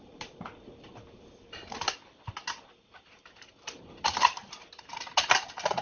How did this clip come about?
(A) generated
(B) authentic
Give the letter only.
B